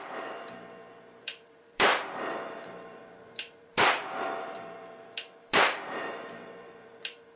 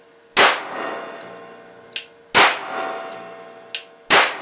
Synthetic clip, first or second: first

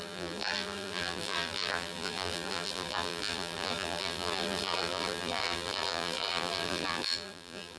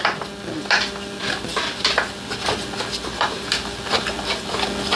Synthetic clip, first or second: first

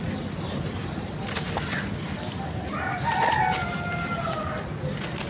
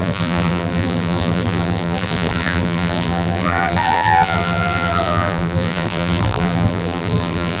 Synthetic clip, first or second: second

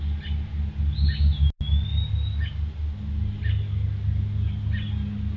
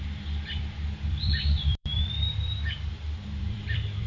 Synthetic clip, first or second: second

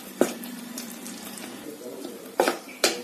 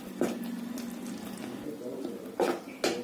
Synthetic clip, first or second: first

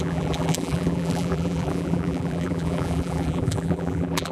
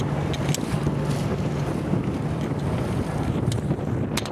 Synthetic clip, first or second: first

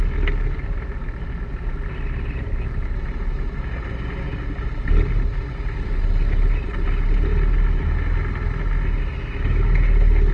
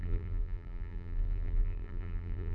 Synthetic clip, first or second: second